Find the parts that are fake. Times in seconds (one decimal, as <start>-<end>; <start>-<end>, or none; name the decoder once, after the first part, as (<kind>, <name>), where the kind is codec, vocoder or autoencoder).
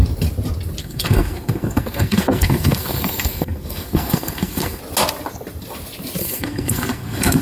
0.8-4.8 (codec, SNAC); 6.2-7.4